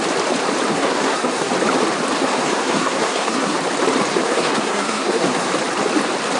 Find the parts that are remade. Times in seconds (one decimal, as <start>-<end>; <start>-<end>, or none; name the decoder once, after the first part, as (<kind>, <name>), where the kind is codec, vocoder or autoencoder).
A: 0.7-1.5 (codec, SNAC); 2.2-3.6; 4.1-5.5

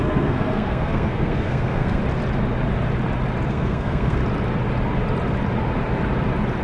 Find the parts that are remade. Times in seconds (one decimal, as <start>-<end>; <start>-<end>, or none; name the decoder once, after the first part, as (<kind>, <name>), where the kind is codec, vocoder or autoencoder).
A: 0.0-2.0 (codec, SNAC); 3.5-4.2

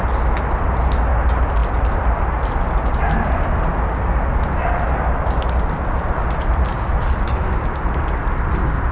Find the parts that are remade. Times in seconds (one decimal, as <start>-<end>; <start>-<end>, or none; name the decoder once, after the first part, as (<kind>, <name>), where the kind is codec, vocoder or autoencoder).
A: 1.6-3.0 (vocoder, BigVGAN v2)

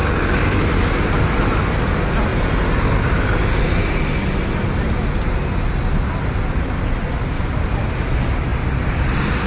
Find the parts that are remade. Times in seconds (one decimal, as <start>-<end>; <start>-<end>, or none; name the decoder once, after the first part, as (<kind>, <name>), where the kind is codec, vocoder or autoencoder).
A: 0.0-0.7 (codec, DAC)

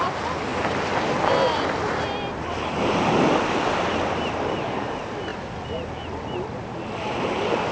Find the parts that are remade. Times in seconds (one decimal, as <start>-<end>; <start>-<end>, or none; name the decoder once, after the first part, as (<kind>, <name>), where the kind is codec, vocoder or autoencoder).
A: none

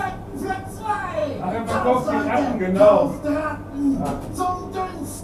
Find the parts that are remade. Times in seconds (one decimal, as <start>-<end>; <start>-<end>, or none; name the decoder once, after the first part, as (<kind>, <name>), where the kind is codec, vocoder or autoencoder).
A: 0.0-1.2 (vocoder, BigVGAN v2); 2.6-3.1

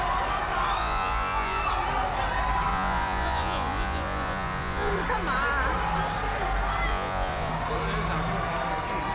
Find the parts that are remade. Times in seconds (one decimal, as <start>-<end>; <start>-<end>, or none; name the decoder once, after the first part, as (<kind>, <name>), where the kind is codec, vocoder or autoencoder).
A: 0.8-1.6 (vocoder, Vocos); 2.7-4.9; 6.9-7.5